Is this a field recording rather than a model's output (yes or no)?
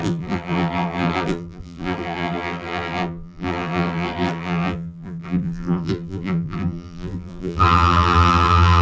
no